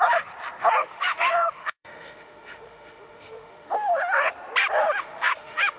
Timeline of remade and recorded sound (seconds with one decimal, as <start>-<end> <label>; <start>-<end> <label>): 0.0-0.8 recorded; 0.8-4.3 remade; 4.3-4.8 recorded; 4.8-5.8 remade